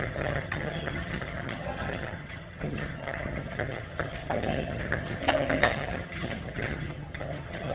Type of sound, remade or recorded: remade